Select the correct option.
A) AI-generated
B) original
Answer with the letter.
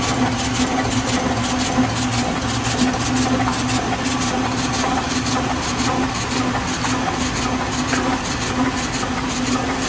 B